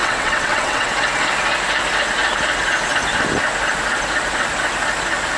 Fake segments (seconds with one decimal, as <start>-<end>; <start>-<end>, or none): 0.0-0.9